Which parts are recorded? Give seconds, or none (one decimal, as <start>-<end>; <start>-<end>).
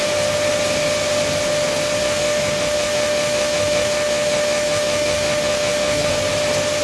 0.0-2.0; 6.1-6.8